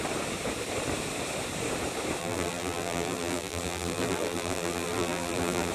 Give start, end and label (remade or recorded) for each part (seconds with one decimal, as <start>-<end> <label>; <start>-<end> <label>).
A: 0.0-2.2 recorded; 2.2-5.7 remade